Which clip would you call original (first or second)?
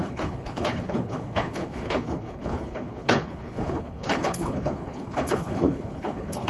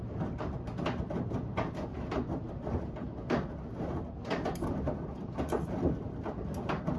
second